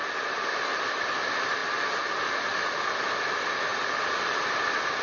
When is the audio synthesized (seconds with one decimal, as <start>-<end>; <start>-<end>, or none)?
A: none